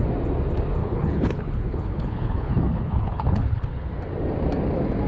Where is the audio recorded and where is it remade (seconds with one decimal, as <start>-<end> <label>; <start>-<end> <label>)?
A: 0.0-0.8 recorded; 0.8-3.9 remade; 3.9-5.1 recorded